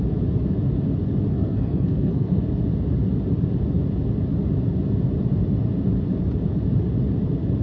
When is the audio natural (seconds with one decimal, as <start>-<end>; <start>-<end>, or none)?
0.0-1.3; 2.4-7.6